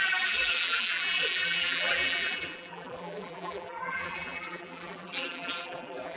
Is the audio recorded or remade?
remade